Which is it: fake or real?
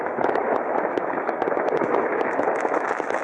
fake